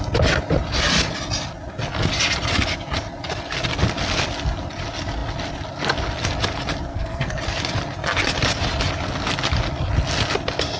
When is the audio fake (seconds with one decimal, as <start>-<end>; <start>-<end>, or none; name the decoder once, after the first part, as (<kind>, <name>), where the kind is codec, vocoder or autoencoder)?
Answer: 6.9-7.4 (codec, SNAC)